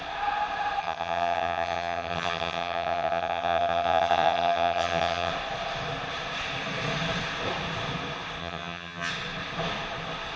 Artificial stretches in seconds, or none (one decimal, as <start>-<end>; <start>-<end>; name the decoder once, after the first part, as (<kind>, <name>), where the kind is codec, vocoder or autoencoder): 0.8-5.3 (vocoder, HiFi-GAN); 8.4-9.1